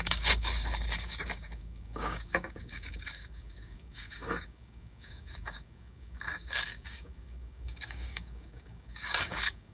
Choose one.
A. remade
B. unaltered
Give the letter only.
A